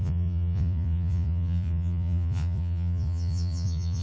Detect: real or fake fake